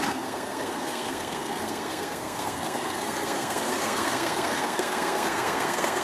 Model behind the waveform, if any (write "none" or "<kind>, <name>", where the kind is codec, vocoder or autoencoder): codec, SNAC